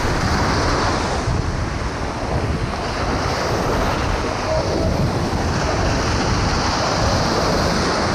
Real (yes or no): yes